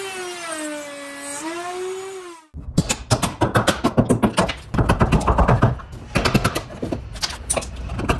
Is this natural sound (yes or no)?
yes